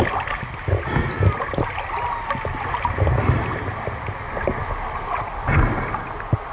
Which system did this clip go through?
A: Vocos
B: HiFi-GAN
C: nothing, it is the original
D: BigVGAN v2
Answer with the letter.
C